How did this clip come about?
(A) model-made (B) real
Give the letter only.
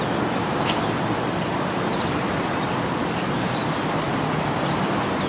B